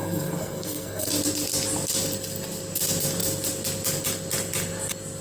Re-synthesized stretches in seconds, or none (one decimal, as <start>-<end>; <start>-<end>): 0.0-1.1